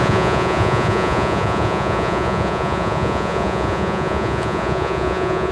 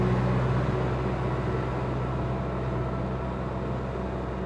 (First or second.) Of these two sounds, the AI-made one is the first